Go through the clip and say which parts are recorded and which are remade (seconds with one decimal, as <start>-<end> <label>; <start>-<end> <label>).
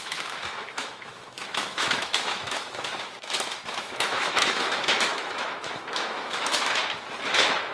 0.0-6.8 remade; 6.8-7.3 recorded; 7.3-7.7 remade